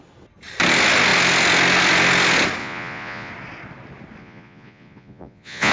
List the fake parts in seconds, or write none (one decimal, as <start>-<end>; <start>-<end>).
2.6-3.3; 4.2-5.7